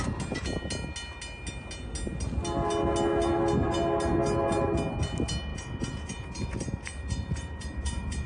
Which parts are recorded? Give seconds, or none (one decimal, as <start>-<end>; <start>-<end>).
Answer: 0.0-5.5